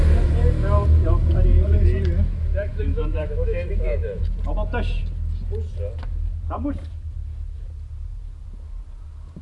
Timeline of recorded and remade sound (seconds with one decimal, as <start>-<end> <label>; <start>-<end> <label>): 0.0-2.7 recorded; 2.7-4.2 remade; 4.2-9.4 recorded